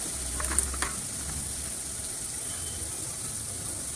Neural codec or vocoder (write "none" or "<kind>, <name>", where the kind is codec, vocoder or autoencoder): none